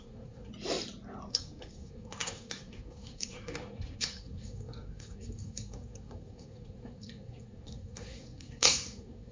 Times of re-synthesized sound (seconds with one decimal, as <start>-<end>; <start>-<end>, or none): 0.0-0.5; 1.3-9.3